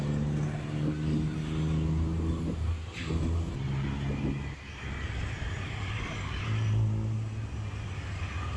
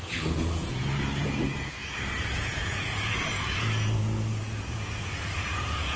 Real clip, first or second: first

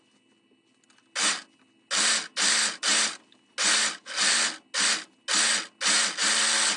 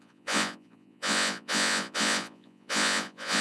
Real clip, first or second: first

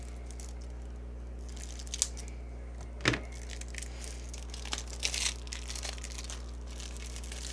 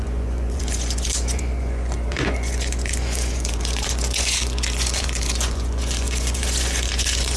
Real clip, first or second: first